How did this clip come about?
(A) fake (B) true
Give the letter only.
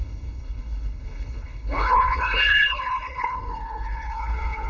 A